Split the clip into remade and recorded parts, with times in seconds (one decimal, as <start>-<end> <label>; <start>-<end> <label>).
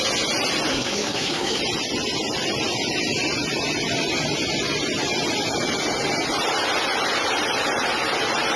0.0-0.7 recorded; 0.7-1.6 remade; 1.6-8.6 recorded